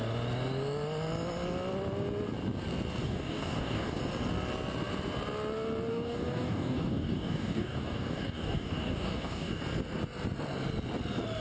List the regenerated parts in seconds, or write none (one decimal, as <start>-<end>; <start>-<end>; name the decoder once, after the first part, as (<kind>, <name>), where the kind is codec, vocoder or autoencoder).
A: 3.0-4.0 (codec, DAC); 5.9-9.6